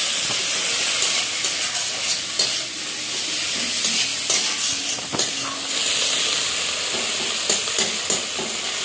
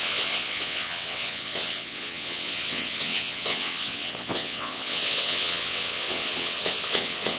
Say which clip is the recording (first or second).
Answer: first